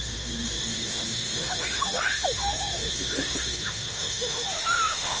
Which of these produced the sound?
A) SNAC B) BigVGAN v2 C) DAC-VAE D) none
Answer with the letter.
C